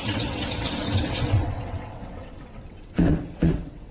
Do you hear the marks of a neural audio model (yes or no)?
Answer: yes